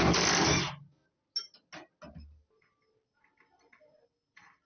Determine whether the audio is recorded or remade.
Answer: recorded